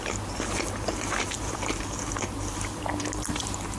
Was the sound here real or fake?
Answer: fake